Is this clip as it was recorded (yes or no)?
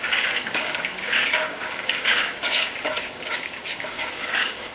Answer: no